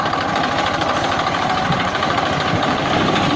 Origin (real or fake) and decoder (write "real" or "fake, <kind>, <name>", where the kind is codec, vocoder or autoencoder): fake, vocoder, BigVGAN v2